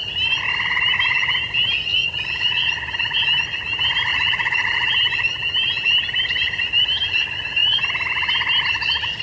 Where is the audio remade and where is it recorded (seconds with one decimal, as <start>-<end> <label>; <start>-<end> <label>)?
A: 0.0-1.9 recorded; 1.9-2.7 remade; 2.7-4.1 recorded; 4.1-4.9 remade; 4.9-9.2 recorded